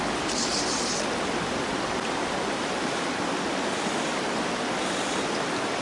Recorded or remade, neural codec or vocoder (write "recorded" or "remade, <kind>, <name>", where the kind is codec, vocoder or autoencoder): recorded